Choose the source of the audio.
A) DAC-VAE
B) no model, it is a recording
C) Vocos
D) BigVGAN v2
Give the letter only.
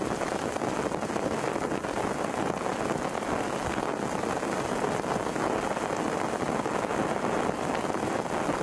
B